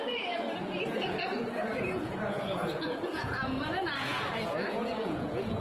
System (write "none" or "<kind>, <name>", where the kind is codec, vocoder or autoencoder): vocoder, Vocos